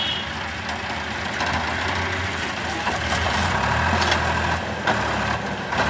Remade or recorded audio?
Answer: recorded